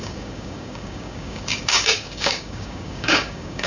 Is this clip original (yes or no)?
no